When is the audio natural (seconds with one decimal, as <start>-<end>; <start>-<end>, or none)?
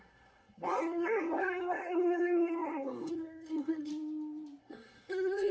3.9-4.6